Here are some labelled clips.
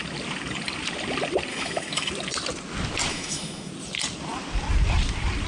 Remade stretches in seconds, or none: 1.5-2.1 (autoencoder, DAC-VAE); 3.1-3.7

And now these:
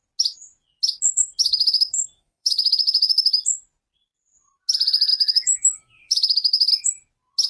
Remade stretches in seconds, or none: 1.4-3.3 (autoencoder, DAC-VAE); 5.1-6.7

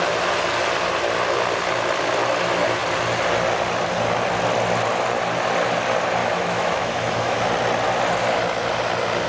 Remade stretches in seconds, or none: 6.2-7.4 (autoencoder, DAC-VAE)

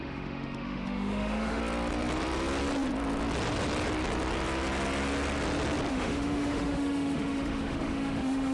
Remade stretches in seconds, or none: 0.0-1.6 (autoencoder, DAC-VAE); 5.9-8.5

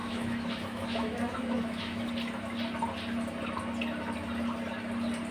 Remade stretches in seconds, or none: 0.0-2.1 (autoencoder, DAC-VAE)